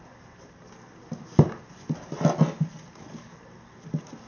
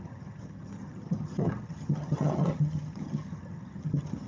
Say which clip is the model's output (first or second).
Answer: second